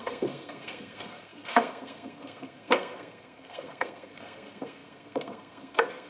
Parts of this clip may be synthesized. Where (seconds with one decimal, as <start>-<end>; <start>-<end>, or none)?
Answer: 0.0-6.1